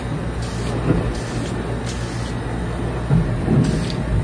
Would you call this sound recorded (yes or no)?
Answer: yes